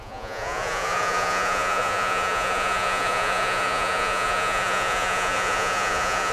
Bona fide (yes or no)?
no